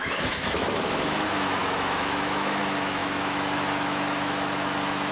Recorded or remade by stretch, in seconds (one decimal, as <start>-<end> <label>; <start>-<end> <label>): 0.0-5.1 remade